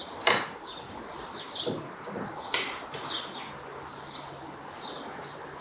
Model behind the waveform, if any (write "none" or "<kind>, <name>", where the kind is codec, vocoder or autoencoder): none